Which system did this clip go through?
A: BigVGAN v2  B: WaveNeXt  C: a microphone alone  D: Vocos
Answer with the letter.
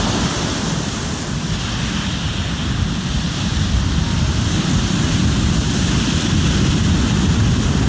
C